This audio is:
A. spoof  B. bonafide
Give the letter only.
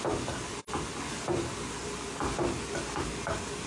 B